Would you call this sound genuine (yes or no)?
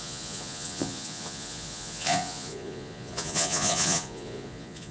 no